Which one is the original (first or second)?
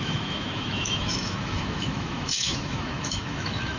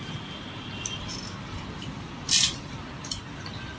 second